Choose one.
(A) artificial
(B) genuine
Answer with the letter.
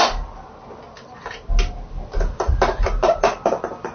B